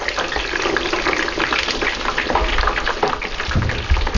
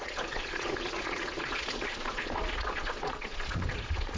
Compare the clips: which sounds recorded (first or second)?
first